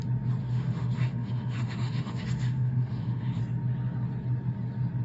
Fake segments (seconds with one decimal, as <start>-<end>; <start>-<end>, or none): 0.4-3.4